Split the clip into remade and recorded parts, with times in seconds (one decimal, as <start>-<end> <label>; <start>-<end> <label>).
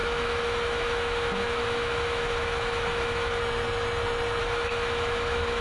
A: 0.0-3.4 remade; 3.4-4.4 recorded; 4.4-5.6 remade